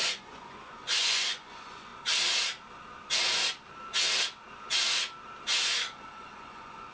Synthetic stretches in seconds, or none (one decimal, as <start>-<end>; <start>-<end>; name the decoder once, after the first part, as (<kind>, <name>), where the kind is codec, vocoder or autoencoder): 0.0-1.9 (vocoder, Vocos); 6.0-6.9